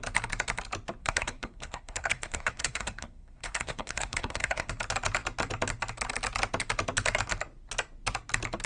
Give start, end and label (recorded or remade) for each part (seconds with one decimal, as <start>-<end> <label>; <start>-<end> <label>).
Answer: 0.0-1.0 recorded; 1.0-4.7 remade; 4.7-8.7 recorded